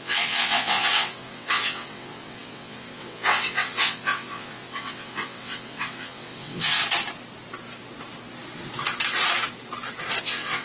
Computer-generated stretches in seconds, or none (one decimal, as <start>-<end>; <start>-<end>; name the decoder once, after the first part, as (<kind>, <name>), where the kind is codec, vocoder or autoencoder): 0.0-6.8 (vocoder, WaveNeXt); 10.2-10.6